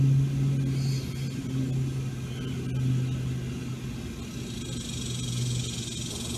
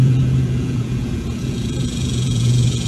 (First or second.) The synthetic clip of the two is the second